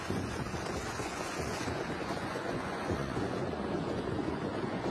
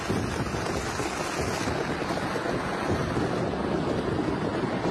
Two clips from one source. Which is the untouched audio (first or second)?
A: second